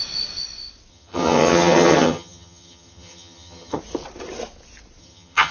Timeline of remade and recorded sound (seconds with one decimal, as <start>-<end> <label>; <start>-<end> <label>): 0.0-0.9 recorded; 0.9-3.8 remade; 3.8-5.0 recorded; 5.0-5.5 remade